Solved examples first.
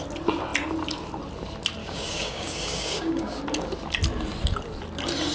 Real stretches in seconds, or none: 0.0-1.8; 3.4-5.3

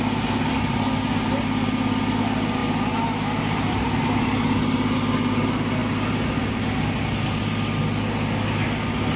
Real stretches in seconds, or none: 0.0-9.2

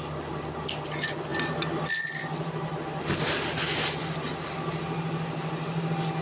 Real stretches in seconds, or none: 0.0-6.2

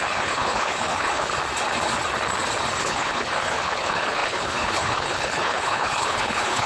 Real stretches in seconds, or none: 1.3-2.8

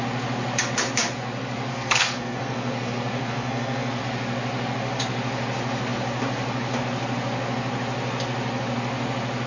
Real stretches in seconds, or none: 0.0-1.7; 4.0-9.5

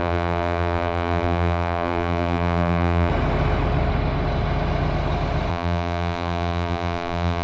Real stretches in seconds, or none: 3.1-5.5

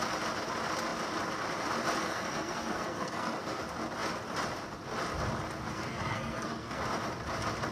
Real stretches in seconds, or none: 0.0-2.0; 3.6-5.7; 6.8-7.7